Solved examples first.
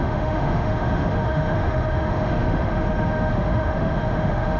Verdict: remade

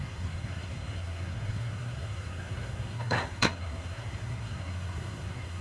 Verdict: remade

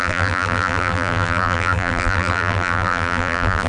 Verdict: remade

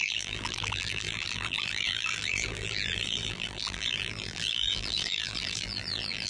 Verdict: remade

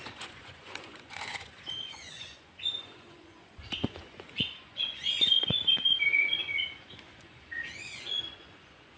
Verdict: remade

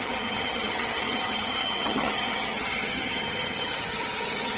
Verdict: remade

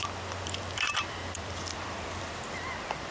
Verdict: remade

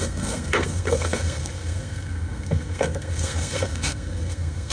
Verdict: remade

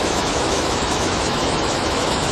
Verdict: remade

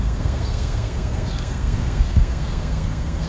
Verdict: remade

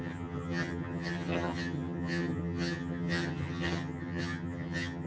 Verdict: remade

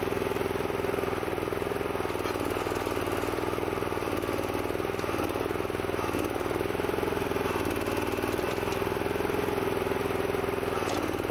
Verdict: remade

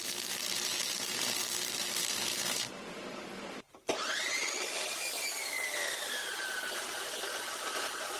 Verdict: remade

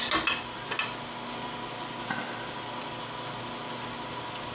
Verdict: recorded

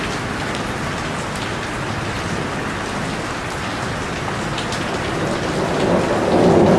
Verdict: recorded